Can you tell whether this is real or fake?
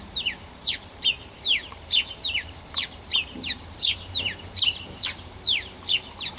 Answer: fake